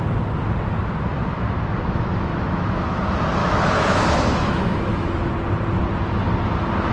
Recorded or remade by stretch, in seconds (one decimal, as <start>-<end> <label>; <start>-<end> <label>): 0.0-1.1 recorded; 1.1-3.0 remade; 3.0-3.4 recorded; 3.4-5.3 remade; 5.3-6.9 recorded